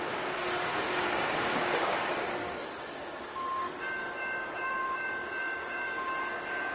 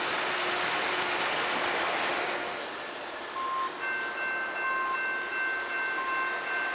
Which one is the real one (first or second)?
second